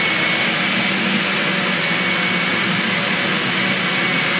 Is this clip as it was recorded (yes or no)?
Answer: yes